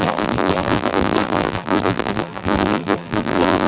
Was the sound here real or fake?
fake